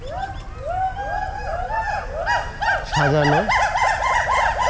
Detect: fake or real real